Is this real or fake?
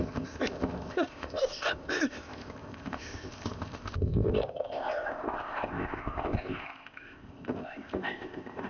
fake